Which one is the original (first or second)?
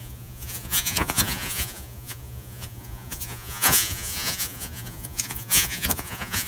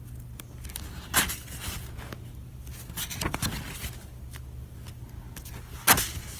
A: second